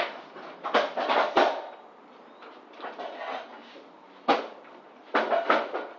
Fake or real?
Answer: real